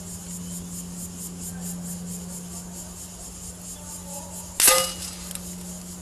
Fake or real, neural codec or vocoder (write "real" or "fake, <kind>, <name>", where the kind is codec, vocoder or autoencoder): real